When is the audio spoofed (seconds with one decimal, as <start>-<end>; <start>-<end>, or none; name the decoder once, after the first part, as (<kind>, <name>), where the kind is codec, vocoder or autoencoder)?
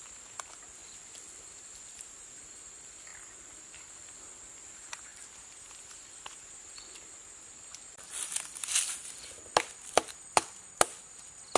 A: none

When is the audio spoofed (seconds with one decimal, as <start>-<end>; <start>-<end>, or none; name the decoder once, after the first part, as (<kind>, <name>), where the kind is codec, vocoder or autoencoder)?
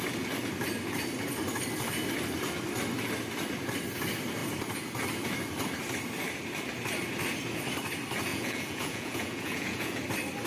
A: 8.3-10.0 (vocoder, Vocos)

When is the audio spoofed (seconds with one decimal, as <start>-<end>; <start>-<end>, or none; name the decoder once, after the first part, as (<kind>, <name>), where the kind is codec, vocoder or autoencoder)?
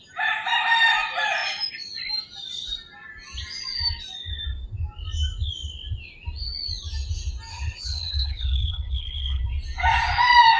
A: 7.5-9.4 (codec, HILCodec)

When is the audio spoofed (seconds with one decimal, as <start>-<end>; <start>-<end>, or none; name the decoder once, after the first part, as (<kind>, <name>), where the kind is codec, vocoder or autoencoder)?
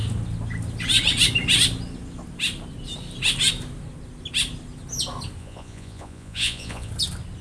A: 5.4-6.9 (vocoder, Vocos)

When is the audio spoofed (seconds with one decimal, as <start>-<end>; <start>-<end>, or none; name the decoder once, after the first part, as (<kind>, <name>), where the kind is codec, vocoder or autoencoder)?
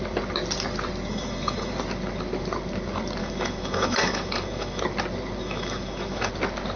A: 1.1-1.7 (autoencoder, DAC-VAE); 3.2-4.8; 5.4-6.3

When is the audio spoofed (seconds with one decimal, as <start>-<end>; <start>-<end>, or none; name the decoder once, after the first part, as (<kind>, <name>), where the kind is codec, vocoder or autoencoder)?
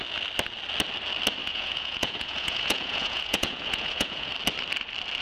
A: 1.4-4.3 (vocoder, Vocos)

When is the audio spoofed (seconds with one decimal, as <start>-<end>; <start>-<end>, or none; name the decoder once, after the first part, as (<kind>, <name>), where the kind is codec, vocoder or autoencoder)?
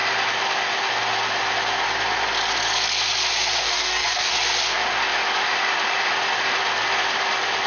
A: 3.6-4.3 (codec, DAC)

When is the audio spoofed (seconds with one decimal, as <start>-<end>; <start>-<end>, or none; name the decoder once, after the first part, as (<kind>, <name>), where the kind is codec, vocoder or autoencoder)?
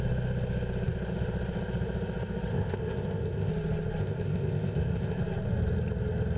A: 2.5-3.5 (codec, ZipCodec); 4.0-5.2